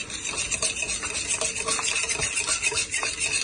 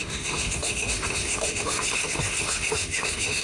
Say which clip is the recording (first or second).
first